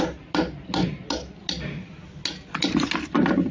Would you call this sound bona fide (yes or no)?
yes